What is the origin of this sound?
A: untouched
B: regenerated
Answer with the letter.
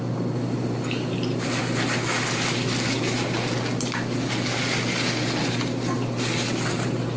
A